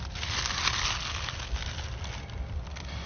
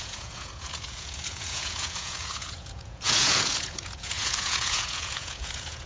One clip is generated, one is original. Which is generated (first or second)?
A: second